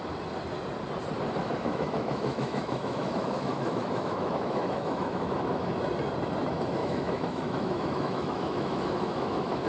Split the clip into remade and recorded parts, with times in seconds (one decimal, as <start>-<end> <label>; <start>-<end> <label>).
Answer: 0.0-1.4 recorded; 1.4-5.7 remade; 5.7-6.8 recorded; 6.8-9.7 remade